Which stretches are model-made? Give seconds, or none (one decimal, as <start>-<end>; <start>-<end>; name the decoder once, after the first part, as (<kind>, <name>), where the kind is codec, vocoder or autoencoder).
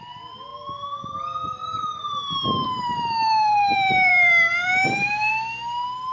1.6-5.3 (vocoder, BigVGAN v2)